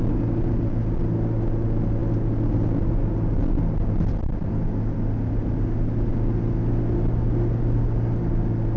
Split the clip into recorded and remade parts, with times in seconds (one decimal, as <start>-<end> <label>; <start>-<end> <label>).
0.0-8.8 recorded

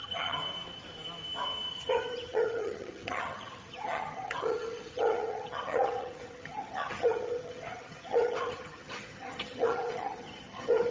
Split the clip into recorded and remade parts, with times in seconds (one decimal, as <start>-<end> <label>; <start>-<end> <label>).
0.0-0.4 remade; 0.4-1.7 recorded; 1.7-10.9 remade